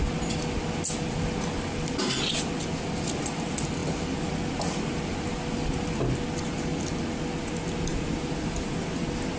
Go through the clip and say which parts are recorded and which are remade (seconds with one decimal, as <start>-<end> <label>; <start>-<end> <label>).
0.0-7.9 recorded; 7.9-8.7 remade; 8.7-9.4 recorded